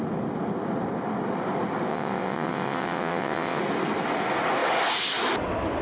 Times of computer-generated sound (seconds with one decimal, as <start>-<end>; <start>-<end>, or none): 1.9-3.6